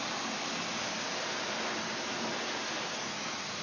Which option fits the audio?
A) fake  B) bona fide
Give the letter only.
B